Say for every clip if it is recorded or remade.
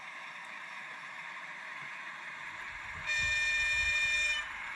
remade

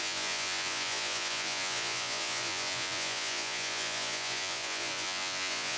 remade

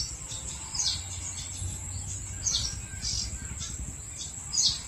recorded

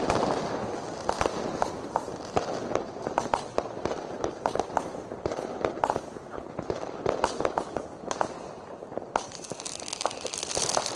recorded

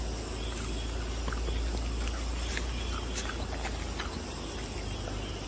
recorded